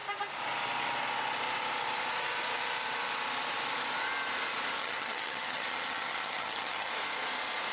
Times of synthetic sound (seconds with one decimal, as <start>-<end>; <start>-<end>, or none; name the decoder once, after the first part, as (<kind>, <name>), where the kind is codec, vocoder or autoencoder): 4.8-6.9 (vocoder, HiFi-GAN)

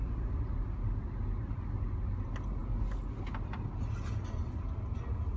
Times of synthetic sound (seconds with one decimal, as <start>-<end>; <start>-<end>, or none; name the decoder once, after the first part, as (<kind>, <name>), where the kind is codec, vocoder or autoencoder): none

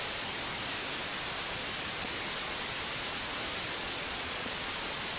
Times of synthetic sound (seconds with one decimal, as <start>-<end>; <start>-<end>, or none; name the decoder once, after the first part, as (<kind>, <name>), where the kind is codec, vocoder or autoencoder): 3.8-4.7 (vocoder, Vocos)

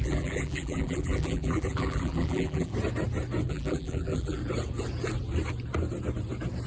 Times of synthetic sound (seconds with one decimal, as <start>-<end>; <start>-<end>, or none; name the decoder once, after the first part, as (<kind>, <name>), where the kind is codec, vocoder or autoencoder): 0.0-2.7 (vocoder, BigVGAN v2); 3.5-4.4

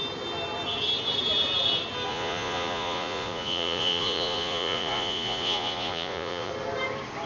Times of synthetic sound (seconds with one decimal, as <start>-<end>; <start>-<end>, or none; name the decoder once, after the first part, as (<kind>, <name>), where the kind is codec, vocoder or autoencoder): 2.1-6.5 (vocoder, Vocos)

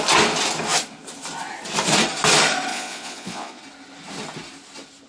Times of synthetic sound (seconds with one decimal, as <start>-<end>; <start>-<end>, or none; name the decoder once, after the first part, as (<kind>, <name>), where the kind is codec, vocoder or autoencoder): 2.7-3.6 (vocoder, Vocos)